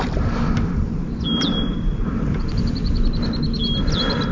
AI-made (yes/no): no